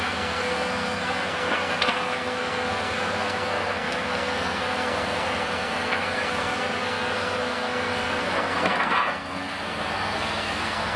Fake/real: fake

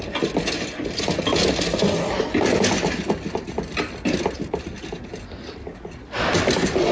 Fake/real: real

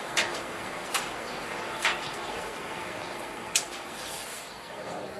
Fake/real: fake